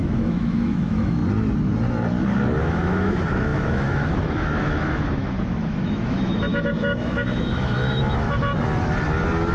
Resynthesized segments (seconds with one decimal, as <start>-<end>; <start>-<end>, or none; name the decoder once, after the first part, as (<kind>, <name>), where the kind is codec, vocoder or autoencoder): 0.0-1.2 (autoencoder, DAC-VAE); 2.6-8.5